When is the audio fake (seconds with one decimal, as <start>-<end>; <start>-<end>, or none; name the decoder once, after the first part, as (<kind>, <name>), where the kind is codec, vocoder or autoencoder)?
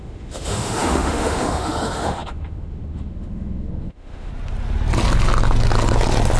0.0-4.3 (autoencoder, DAC-VAE)